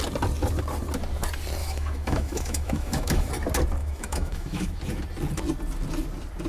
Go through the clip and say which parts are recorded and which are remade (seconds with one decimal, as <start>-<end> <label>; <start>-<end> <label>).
0.0-1.6 recorded; 1.6-3.3 remade; 3.3-3.8 recorded; 3.8-4.8 remade; 4.8-6.5 recorded